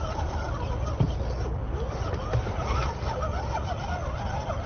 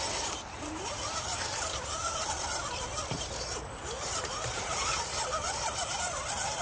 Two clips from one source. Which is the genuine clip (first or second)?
first